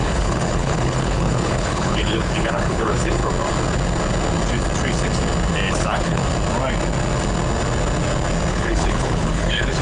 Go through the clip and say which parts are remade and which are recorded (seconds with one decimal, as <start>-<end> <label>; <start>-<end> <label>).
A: 0.0-3.2 remade; 3.2-5.7 recorded; 5.7-6.2 remade; 6.2-8.5 recorded; 8.5-9.8 remade